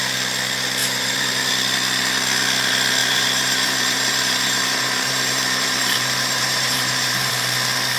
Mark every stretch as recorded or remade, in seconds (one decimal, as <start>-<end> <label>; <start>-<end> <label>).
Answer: 0.0-0.8 recorded; 0.8-1.5 remade; 1.5-3.0 recorded; 3.0-7.3 remade; 7.3-8.0 recorded